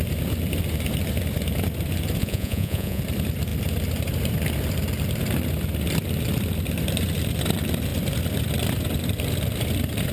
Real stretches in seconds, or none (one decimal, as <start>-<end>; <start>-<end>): 0.0-2.2; 3.0-10.1